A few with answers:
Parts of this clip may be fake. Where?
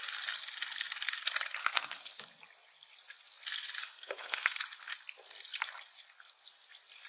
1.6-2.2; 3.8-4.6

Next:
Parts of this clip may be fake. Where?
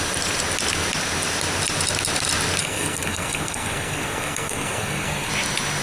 2.6-5.3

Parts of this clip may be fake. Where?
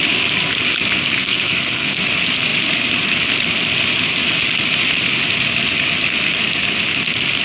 1.2-2.0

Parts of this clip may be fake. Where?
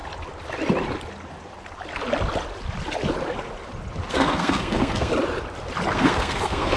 4.1-5.1; 5.9-6.8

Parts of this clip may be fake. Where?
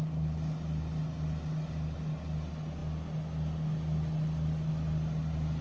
none